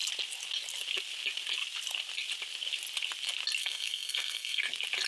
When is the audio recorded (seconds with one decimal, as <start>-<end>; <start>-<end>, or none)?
0.0-3.6; 4.6-5.1